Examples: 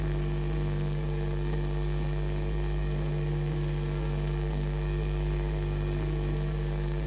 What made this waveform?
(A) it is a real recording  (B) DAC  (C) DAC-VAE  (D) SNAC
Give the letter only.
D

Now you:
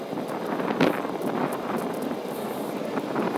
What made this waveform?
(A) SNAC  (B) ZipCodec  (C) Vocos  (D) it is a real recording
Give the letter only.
D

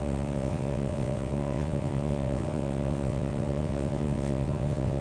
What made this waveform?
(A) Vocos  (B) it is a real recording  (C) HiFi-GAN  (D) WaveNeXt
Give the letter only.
D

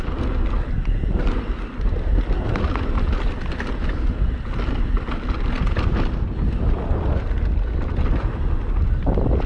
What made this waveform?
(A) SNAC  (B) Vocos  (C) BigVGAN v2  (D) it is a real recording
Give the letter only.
D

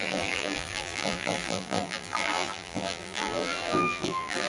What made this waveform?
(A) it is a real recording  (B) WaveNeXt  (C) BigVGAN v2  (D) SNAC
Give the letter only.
C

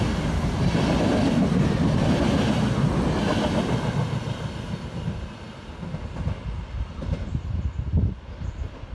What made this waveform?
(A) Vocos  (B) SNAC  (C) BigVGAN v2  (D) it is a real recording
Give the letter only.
D